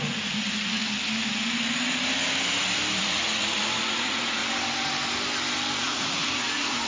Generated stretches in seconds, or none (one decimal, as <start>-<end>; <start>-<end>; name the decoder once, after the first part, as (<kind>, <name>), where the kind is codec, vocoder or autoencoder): 0.0-0.8 (vocoder, Vocos); 3.0-4.4; 5.8-6.9